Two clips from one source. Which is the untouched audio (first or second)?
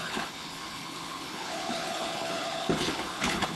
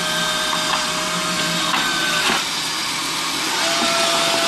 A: second